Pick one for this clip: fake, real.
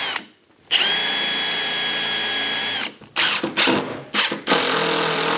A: real